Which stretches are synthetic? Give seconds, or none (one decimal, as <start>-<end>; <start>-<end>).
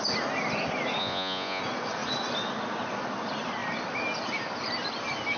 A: 1.0-1.6